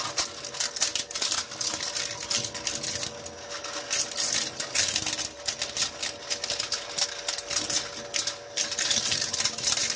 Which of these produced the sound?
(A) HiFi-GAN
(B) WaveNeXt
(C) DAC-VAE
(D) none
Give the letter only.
D